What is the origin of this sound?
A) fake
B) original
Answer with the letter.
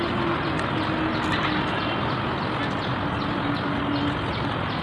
B